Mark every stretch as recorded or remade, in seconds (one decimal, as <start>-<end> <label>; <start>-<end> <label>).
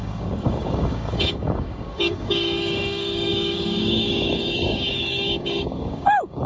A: 0.0-6.5 remade